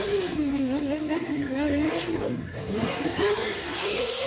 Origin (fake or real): fake